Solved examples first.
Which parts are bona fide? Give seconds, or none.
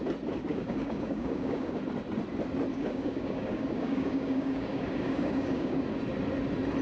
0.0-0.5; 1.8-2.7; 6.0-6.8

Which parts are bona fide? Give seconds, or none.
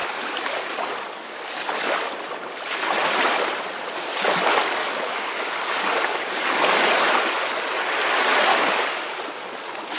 1.9-4.8; 7.1-8.5; 9.2-10.0